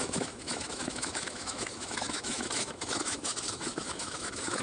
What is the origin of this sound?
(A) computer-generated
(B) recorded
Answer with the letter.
A